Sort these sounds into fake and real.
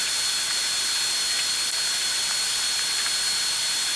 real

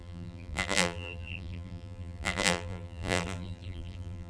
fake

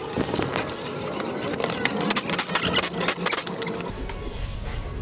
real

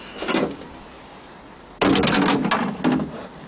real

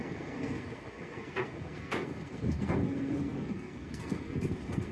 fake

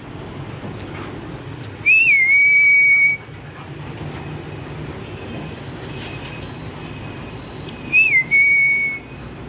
real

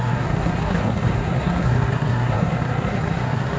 fake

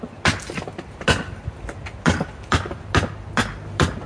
real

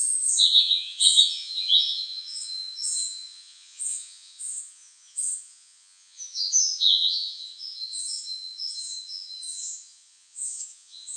fake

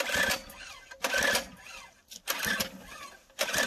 real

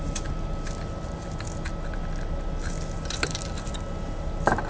real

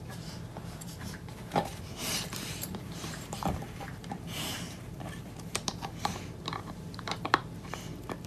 fake